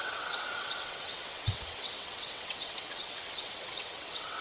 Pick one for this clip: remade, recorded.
remade